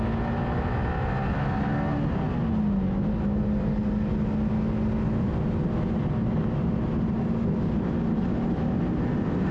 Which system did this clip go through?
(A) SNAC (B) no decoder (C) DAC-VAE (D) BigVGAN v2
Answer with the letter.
B